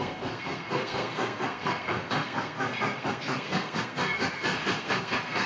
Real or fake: fake